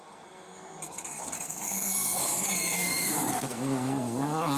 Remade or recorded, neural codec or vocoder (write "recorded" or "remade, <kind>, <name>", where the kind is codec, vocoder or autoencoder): remade, codec, SNAC